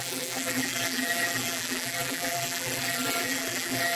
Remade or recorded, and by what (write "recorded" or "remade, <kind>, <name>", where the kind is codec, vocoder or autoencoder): remade, vocoder, BigVGAN v2